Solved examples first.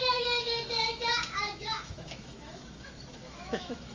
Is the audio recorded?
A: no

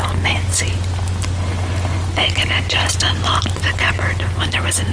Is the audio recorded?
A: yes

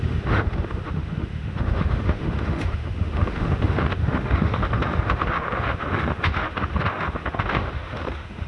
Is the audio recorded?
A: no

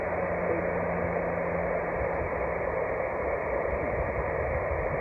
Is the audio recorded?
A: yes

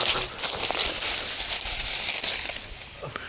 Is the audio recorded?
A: yes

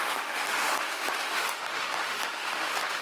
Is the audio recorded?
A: no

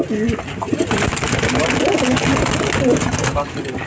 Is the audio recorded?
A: yes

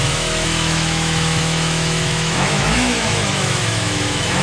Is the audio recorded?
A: no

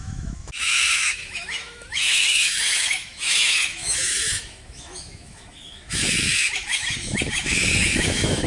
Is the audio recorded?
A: no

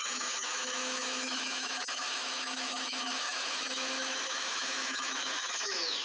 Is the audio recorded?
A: no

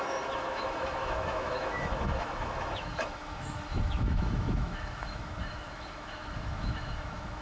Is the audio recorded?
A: no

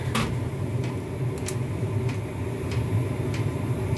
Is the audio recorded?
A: yes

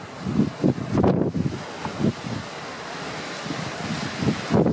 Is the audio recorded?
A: yes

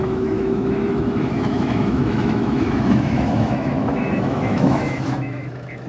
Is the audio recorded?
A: no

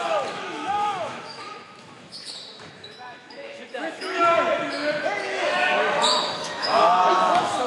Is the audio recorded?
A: no